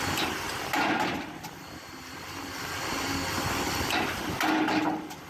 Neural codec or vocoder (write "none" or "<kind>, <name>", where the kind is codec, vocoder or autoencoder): none